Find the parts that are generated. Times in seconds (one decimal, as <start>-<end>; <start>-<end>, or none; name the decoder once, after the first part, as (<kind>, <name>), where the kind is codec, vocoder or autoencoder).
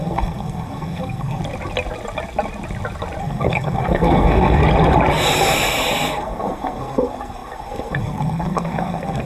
0.0-1.4 (codec, SNAC); 3.2-4.6; 6.1-9.3